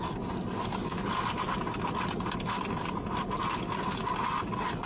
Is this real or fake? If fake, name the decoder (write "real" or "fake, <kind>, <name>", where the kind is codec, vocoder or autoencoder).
real